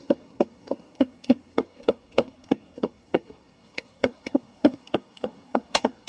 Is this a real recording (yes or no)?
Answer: no